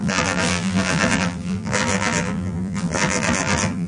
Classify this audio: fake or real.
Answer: fake